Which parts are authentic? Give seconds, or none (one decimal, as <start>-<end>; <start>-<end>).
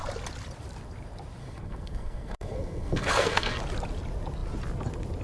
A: 0.0-1.4; 3.6-5.2